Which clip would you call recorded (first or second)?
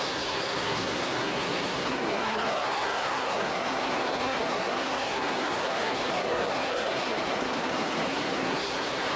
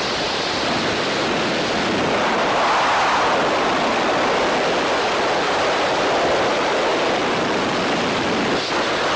second